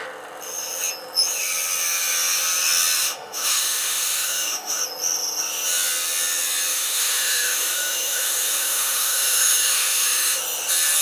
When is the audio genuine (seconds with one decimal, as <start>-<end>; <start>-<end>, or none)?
0.0-3.0; 4.8-6.7; 10.4-11.0

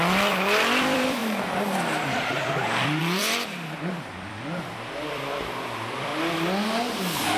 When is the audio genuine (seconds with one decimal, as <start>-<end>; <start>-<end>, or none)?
6.1-7.4

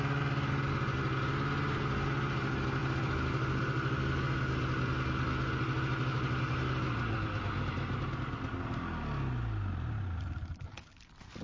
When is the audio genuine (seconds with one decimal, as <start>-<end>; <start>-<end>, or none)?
0.0-11.4

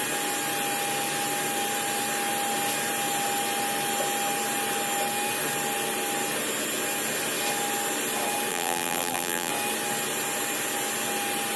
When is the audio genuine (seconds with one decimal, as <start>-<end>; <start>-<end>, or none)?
0.0-8.5; 9.5-11.6

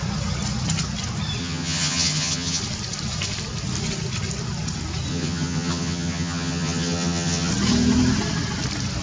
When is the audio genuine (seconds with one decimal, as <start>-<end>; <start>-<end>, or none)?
0.0-1.4; 2.6-5.1; 7.5-9.0

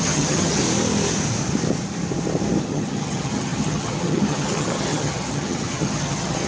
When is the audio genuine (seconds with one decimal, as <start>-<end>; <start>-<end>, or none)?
0.6-2.6